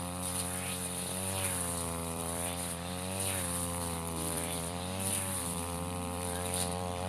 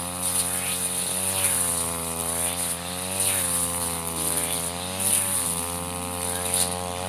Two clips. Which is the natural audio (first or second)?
second